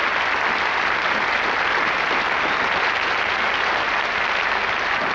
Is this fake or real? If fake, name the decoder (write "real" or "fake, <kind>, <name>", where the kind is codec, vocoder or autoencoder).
real